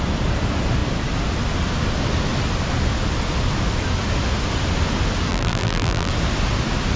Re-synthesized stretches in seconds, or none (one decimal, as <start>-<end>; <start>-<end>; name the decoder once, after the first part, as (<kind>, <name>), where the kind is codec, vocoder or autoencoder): 5.3-6.1 (vocoder, BigVGAN v2)

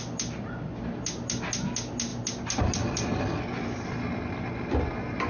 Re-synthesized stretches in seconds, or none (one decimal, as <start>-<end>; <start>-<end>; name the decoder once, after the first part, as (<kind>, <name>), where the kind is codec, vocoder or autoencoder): none

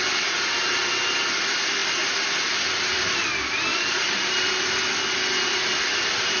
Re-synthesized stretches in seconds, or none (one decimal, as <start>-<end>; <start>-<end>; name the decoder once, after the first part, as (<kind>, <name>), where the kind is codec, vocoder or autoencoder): 3.7-4.4 (vocoder, BigVGAN v2)

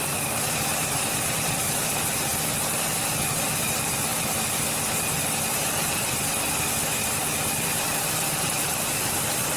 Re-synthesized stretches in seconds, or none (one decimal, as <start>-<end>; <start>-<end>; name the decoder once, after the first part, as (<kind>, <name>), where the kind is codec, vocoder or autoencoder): 0.0-2.3 (vocoder, BigVGAN v2); 3.4-4.1; 7.8-9.6